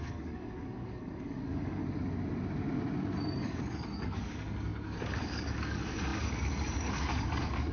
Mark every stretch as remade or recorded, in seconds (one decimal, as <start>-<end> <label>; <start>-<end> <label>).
0.0-1.8 remade; 1.8-3.4 recorded; 3.4-7.7 remade